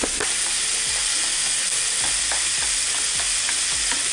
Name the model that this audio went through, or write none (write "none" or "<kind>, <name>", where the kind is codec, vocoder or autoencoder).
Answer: none